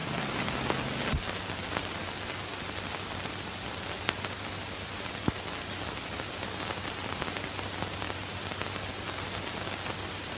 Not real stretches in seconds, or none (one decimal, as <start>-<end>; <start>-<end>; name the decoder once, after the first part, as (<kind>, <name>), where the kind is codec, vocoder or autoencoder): none